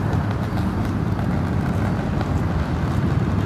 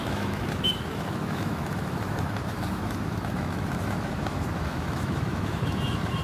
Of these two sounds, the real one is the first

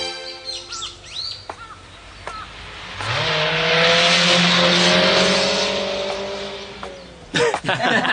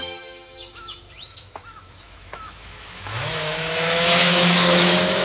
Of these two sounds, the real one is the first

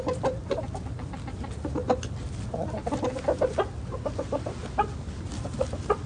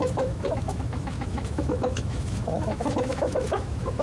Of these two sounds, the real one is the first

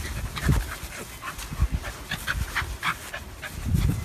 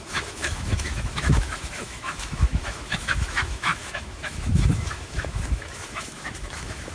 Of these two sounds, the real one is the first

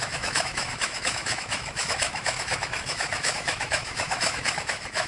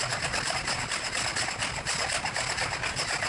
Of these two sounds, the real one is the second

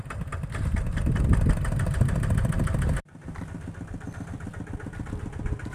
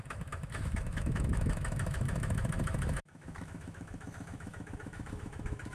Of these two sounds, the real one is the first